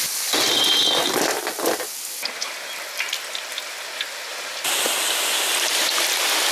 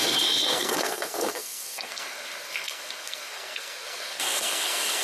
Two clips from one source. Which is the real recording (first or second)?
first